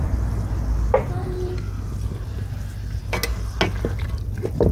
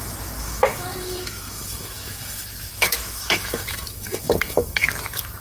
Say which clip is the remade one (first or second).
second